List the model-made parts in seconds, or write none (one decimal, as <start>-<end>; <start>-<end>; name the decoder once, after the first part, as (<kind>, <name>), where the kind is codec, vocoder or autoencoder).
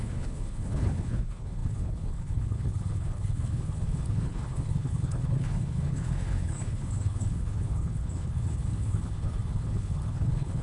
0.0-10.6 (codec, HILCodec)